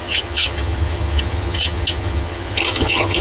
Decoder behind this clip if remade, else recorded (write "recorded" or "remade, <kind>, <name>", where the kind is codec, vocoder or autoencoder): remade, vocoder, HiFi-GAN